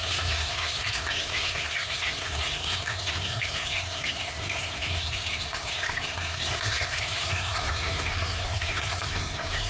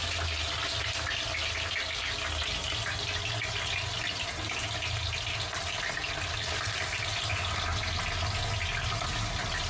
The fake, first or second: first